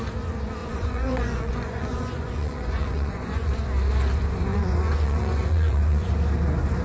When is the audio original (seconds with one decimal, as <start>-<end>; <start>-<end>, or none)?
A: 0.0-0.6; 3.5-4.5; 6.1-6.8